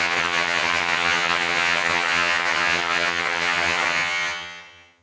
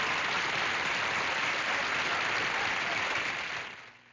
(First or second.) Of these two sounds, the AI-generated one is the first